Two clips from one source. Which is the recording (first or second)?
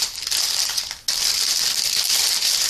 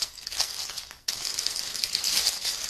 first